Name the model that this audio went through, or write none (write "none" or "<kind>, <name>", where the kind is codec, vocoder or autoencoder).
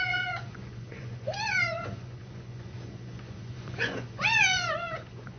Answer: vocoder, Vocos